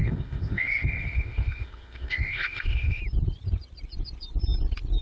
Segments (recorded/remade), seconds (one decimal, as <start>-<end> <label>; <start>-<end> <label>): 0.0-3.0 remade; 3.0-5.0 recorded